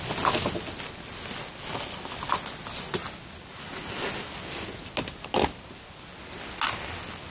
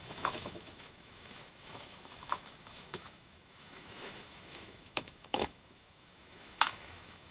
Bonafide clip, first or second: first